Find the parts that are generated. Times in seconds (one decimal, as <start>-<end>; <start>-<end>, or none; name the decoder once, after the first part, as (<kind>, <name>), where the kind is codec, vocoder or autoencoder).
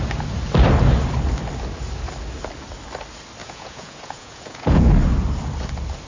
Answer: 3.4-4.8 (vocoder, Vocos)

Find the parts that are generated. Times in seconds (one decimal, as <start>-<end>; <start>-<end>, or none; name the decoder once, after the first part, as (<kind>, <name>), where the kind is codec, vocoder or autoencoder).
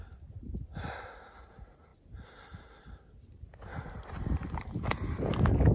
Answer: none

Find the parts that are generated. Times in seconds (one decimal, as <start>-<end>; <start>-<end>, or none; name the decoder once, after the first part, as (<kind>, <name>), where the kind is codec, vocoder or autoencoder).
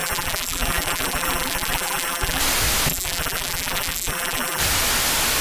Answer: 0.0-2.4 (vocoder, BigVGAN v2); 2.9-4.6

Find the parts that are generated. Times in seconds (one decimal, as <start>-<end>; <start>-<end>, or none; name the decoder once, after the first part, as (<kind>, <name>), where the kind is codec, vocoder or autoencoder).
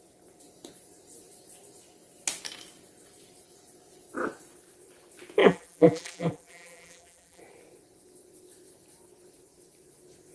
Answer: 5.4-7.4 (vocoder, BigVGAN v2)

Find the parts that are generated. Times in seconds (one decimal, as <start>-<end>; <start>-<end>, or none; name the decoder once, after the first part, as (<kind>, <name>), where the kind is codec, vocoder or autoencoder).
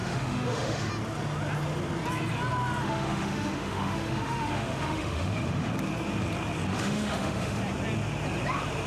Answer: 0.0-0.9 (autoencoder, DAC-VAE); 2.8-5.7; 6.7-7.6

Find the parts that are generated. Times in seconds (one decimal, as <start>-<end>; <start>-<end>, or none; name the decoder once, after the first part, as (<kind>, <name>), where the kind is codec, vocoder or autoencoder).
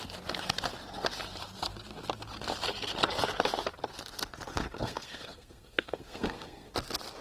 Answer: 4.5-6.7 (codec, SNAC)